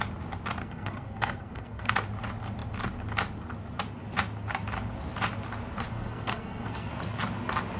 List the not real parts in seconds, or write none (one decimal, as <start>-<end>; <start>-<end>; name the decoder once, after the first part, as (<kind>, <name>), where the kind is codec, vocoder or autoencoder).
0.6-1.9 (codec, SNAC); 5.9-6.9